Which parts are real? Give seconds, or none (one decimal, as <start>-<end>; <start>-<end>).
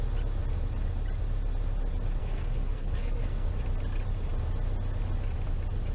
0.0-2.2; 3.5-5.9